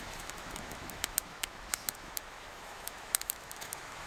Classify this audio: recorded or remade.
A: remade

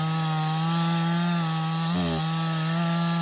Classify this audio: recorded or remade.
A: recorded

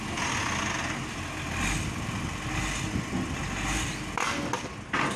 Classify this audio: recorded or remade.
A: recorded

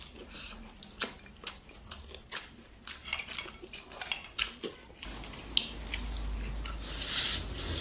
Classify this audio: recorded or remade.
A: recorded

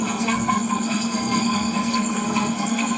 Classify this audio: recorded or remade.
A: remade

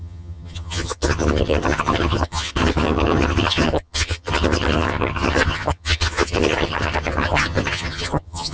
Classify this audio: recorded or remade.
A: remade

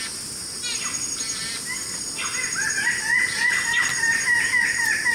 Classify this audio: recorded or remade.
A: recorded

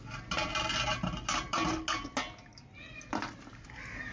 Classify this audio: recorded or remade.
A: recorded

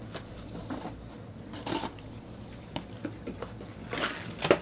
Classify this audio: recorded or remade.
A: recorded